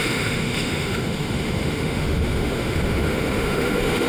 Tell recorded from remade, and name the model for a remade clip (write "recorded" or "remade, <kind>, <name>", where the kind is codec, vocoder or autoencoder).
remade, autoencoder, DAC-VAE